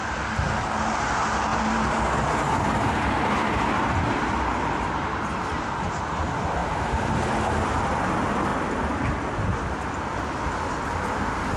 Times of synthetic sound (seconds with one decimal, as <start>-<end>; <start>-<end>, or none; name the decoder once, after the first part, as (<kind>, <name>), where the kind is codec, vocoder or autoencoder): 1.5-5.4 (vocoder, BigVGAN v2); 6.6-7.1